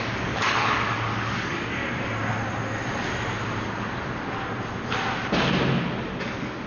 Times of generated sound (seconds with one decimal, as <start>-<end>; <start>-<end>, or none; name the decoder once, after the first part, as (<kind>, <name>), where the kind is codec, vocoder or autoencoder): 0.0-1.8 (codec, DAC); 5.8-6.7